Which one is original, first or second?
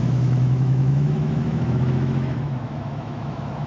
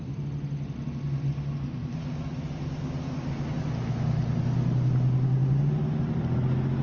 second